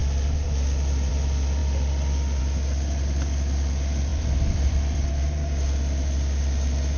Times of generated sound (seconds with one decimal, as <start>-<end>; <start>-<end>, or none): 4.1-5.1